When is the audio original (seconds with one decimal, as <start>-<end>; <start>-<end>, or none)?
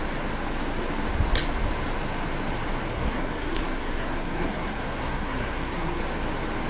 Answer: 0.0-2.9; 6.0-6.7